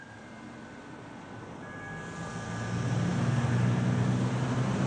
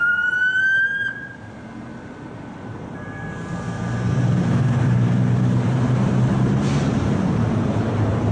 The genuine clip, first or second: first